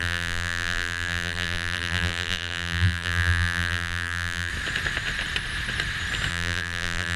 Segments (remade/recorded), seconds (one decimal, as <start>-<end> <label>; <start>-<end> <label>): 0.0-4.5 remade; 4.5-6.3 recorded; 6.3-7.2 remade